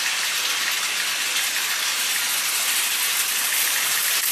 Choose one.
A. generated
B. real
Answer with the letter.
B